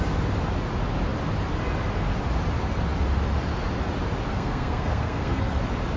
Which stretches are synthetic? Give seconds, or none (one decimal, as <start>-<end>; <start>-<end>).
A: 4.3-5.6